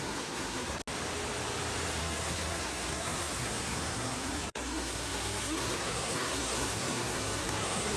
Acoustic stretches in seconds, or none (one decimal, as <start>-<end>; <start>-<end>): 0.8-2.0